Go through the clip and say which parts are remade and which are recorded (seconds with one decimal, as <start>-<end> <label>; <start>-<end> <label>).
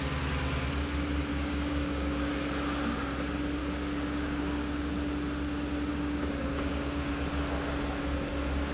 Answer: 0.0-1.3 recorded; 1.3-2.3 remade; 2.3-3.6 recorded; 3.6-4.9 remade; 4.9-5.9 recorded; 5.9-7.1 remade; 7.1-8.7 recorded